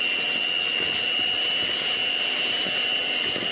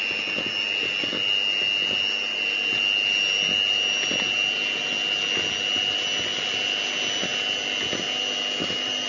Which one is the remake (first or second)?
first